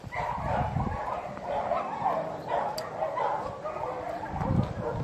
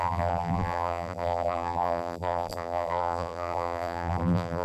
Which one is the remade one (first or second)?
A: second